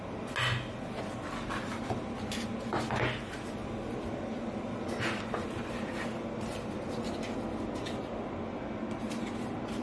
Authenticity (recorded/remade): recorded